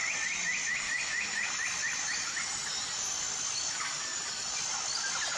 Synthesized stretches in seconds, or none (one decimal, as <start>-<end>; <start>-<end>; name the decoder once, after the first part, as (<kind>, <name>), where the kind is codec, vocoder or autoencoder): 4.1-4.6 (vocoder, Vocos)